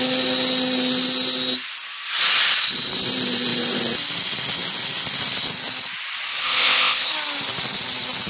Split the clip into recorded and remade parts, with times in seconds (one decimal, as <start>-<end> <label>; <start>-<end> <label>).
0.0-6.4 recorded; 6.4-7.1 remade; 7.1-8.3 recorded